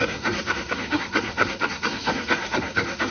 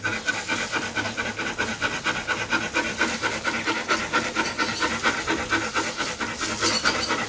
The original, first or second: second